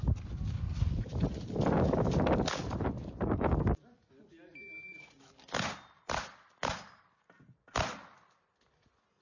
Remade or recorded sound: recorded